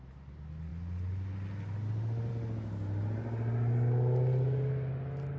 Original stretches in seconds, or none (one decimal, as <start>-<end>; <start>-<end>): 0.0-5.4